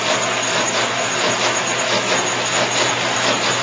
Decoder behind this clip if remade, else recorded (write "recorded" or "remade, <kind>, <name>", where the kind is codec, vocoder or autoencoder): recorded